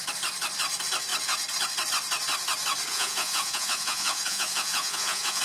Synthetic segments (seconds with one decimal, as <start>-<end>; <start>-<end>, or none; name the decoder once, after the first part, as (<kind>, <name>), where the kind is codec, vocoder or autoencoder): 2.9-5.4 (vocoder, Vocos)